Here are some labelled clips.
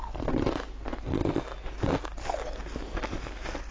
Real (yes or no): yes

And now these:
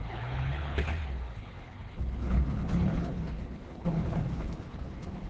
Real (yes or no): no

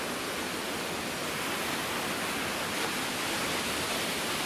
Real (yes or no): yes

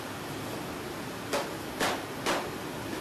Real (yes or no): yes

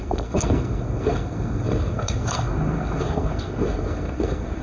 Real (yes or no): no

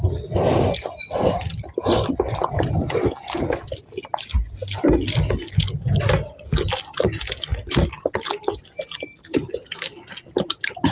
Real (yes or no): yes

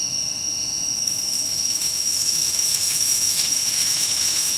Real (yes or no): no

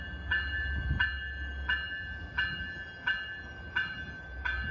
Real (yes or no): yes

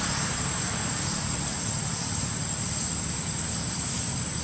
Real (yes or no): no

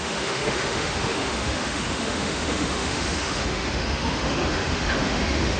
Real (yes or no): no